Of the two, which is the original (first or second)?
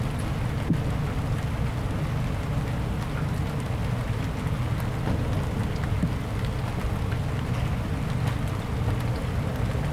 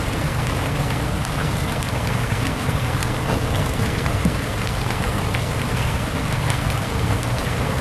first